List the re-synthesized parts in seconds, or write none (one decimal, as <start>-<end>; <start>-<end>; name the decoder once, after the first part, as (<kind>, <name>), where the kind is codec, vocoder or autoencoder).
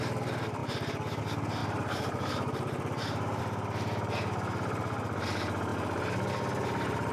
1.6-3.4 (vocoder, BigVGAN v2)